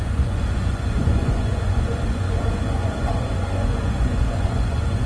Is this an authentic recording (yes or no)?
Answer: no